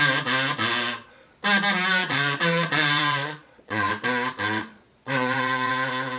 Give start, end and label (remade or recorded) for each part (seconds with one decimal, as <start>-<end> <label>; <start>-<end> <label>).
0.0-2.0 recorded; 2.0-3.9 remade; 3.9-4.6 recorded; 4.6-5.7 remade; 5.7-6.2 recorded